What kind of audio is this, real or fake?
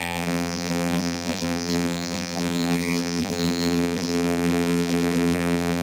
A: fake